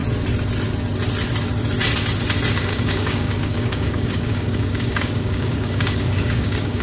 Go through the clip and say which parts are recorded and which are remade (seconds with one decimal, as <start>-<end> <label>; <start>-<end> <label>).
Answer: 0.0-2.5 recorded; 2.5-6.8 remade